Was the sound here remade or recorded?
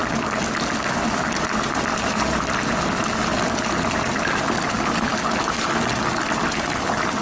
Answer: recorded